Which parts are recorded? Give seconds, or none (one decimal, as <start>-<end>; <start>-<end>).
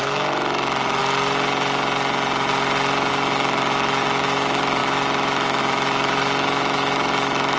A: 1.0-3.1